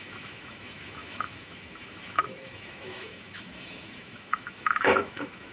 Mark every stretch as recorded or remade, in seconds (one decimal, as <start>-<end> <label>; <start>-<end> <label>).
0.0-5.5 remade